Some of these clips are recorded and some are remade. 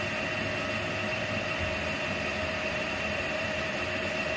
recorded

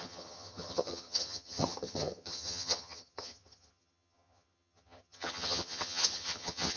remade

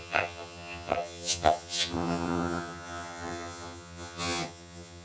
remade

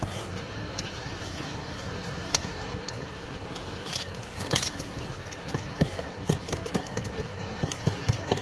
remade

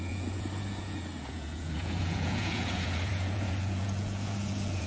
remade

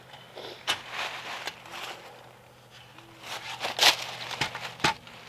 recorded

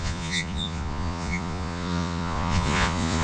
remade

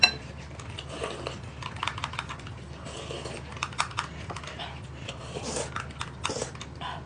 remade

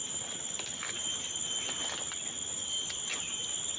recorded